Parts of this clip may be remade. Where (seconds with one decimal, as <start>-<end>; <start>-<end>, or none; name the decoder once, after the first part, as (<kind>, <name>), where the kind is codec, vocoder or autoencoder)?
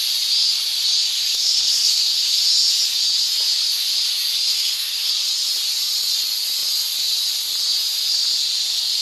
1.3-2.4 (codec, SNAC); 4.5-5.1